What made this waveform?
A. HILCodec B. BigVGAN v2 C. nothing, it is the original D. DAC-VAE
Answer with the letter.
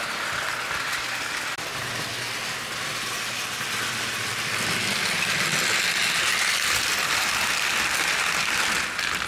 C